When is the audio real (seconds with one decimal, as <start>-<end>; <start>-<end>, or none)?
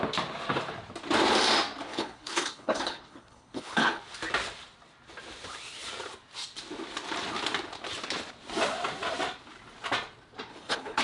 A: 0.0-1.9; 4.0-10.5